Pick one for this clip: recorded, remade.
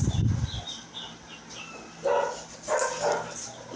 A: recorded